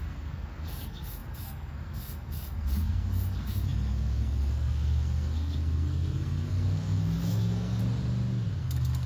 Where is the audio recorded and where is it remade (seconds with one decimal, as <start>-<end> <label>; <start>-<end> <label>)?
0.0-7.8 remade; 7.8-8.6 recorded; 8.6-9.1 remade